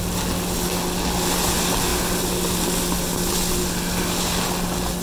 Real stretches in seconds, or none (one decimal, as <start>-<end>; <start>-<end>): 0.0-5.0